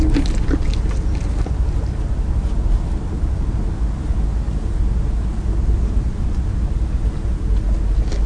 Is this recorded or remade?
recorded